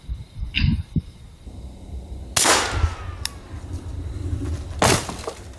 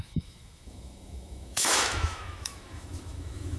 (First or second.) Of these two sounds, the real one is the first